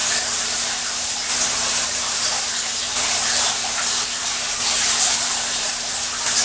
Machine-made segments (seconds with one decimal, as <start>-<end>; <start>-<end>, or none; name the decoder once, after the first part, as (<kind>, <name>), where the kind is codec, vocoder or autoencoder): 0.0-3.8 (vocoder, BigVGAN v2); 4.2-5.7